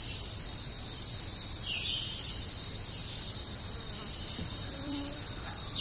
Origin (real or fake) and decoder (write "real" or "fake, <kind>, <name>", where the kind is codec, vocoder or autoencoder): fake, vocoder, BigVGAN v2